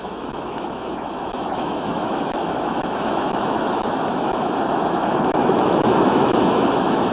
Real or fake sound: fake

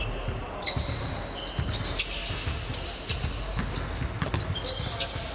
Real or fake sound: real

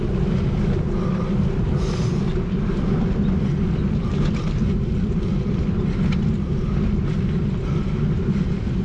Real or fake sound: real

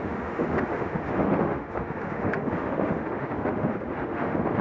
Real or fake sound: fake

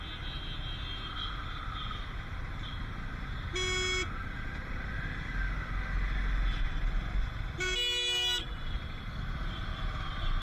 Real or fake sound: real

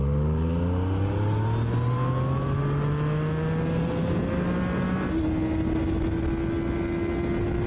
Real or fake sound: real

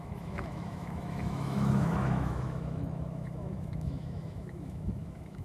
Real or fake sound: fake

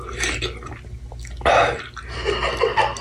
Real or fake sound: real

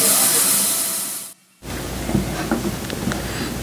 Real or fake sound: real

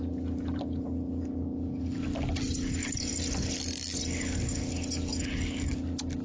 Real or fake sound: real